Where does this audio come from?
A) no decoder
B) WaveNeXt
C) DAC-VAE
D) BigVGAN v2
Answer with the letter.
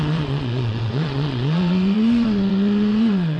B